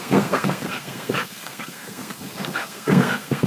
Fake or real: fake